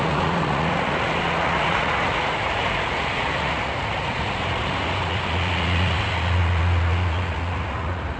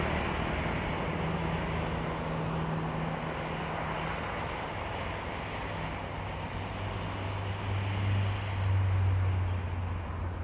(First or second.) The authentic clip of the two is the second